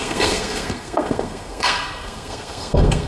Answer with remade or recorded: remade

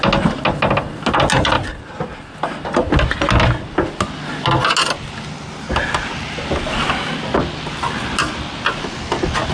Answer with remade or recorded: recorded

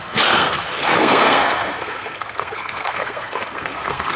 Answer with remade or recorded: remade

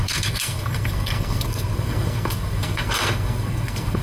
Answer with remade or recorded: remade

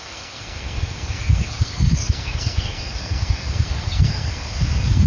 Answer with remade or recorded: remade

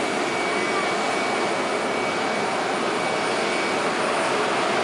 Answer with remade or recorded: recorded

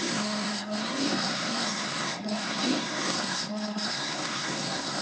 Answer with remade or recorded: remade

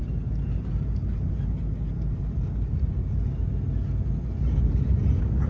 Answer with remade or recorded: recorded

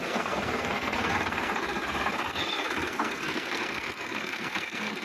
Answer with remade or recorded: remade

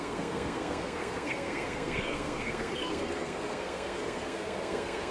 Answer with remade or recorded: remade